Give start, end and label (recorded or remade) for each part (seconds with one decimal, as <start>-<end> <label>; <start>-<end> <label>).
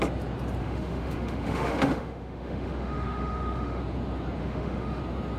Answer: 0.0-0.6 recorded; 0.6-3.8 remade; 3.8-4.4 recorded; 4.4-5.0 remade; 5.0-5.4 recorded